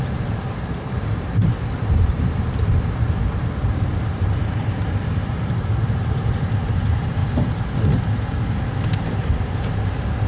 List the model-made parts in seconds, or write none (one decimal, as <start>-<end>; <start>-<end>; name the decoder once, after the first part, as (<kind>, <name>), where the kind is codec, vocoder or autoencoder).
0.0-7.2 (vocoder, BigVGAN v2); 8.1-10.3